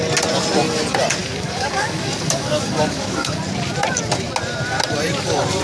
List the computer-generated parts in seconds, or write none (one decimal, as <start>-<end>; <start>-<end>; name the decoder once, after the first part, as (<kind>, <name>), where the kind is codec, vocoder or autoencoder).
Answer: 1.2-3.4 (codec, DAC)